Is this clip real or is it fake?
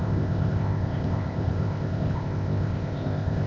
fake